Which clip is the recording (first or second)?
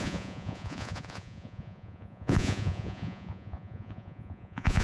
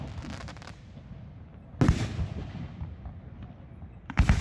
second